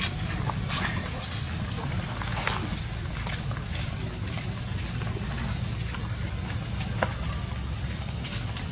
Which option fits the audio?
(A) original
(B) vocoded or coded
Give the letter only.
A